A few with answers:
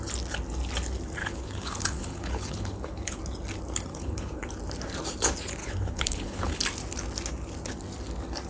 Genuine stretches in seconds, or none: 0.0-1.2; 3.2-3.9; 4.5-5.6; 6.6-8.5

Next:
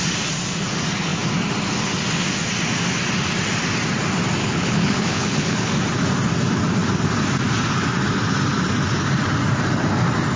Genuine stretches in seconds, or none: 0.0-4.4; 5.7-10.4

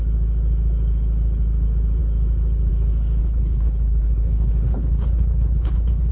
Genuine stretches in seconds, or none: 0.0-3.2

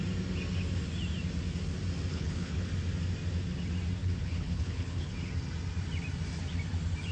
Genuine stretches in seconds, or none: 0.0-2.1; 2.7-4.0; 5.1-7.1